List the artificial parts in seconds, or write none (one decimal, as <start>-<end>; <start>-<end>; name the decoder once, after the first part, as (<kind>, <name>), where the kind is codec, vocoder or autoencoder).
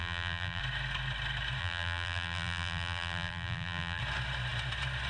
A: 0.0-0.6 (vocoder, BigVGAN v2); 1.6-4.0